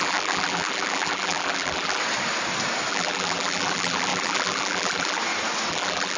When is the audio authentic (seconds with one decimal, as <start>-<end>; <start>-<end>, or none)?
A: 2.0-2.9; 5.2-5.7